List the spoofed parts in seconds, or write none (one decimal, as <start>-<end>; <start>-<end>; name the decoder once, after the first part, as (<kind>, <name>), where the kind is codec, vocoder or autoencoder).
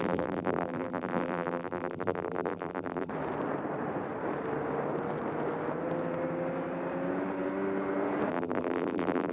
0.0-3.1 (vocoder, BigVGAN v2); 8.3-9.3